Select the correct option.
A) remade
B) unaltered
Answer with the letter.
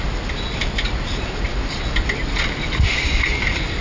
A